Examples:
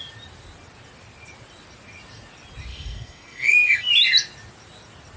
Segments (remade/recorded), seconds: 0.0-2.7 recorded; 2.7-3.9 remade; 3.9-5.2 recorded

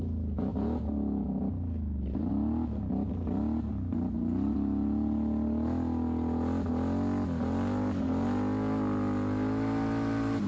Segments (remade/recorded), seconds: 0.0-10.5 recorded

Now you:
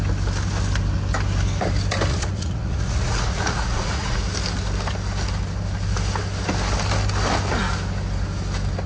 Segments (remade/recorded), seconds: 0.0-2.1 recorded; 2.1-4.2 remade; 4.2-8.9 recorded